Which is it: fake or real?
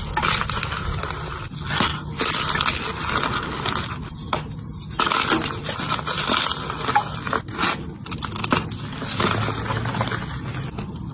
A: real